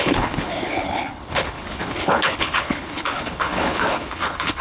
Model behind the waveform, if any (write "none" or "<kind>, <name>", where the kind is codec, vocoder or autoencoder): codec, HILCodec